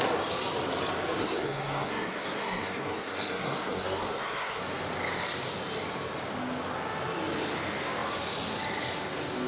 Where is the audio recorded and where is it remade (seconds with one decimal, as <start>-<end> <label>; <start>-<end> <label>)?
0.0-1.2 recorded; 1.2-4.6 remade; 4.6-9.5 recorded